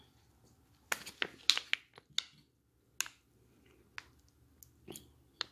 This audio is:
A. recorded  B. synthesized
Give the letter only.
A